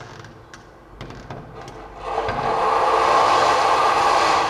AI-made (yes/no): no